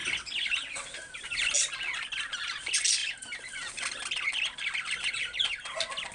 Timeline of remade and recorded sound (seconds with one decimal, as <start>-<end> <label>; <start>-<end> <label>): 0.0-6.1 recorded